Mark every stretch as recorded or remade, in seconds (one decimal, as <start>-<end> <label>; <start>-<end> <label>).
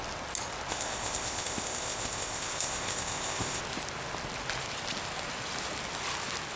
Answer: 0.0-0.7 recorded; 0.7-3.6 remade; 3.6-6.6 recorded